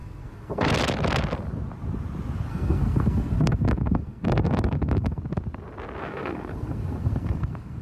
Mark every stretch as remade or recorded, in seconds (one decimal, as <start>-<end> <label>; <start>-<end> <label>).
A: 0.0-0.7 remade; 0.7-2.5 recorded; 2.5-5.2 remade; 5.2-6.0 recorded; 6.0-7.8 remade